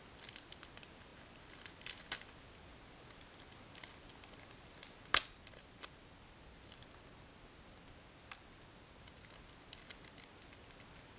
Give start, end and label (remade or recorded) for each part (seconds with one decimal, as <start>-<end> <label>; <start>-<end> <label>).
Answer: 0.0-11.2 recorded